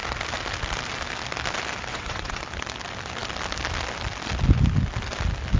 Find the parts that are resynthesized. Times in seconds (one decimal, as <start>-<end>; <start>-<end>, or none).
1.9-2.4